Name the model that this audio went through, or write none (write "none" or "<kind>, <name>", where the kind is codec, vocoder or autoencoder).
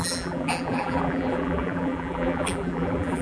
vocoder, BigVGAN v2